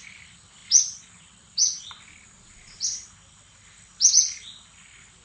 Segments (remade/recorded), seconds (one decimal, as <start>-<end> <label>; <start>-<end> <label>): 0.0-5.2 recorded